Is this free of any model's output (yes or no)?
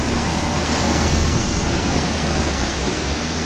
no